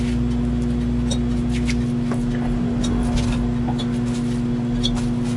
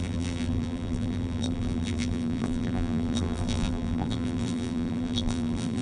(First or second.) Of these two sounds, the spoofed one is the second